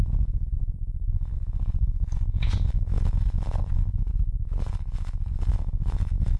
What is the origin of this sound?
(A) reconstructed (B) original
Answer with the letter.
A